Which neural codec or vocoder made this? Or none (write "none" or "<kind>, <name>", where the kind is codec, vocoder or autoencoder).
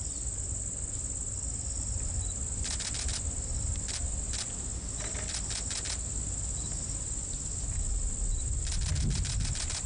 none